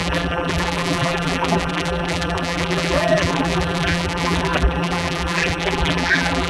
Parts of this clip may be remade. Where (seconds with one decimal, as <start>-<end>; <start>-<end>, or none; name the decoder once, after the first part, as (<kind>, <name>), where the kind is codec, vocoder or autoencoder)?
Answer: 0.0-6.5 (vocoder, BigVGAN v2)